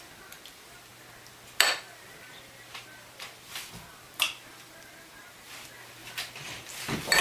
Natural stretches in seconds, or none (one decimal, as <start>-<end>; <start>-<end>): 0.0-7.2